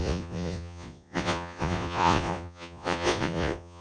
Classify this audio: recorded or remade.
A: remade